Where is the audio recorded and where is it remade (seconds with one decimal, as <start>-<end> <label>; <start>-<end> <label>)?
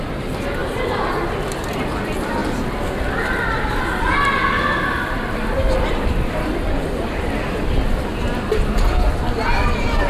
0.0-0.6 remade; 0.6-1.3 recorded; 1.3-2.4 remade; 2.4-3.8 recorded; 3.8-10.1 remade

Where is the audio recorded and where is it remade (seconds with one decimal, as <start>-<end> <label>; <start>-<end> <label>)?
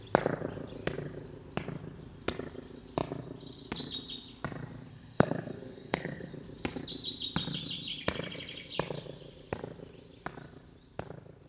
0.0-4.9 recorded; 4.9-6.3 remade; 6.3-11.5 recorded